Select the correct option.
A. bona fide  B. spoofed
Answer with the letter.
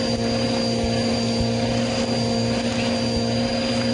A